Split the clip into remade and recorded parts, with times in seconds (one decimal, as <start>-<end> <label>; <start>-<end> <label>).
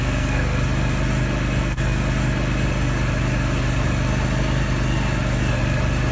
0.0-0.5 remade; 0.5-1.6 recorded; 1.6-2.0 remade; 2.0-6.1 recorded